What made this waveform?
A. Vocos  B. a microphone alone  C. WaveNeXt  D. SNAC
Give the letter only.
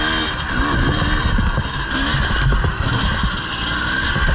B